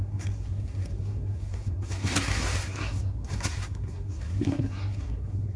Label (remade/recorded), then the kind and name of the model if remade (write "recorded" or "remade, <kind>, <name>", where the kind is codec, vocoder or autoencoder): remade, codec, SNAC